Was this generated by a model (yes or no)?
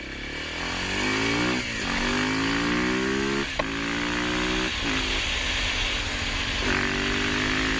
no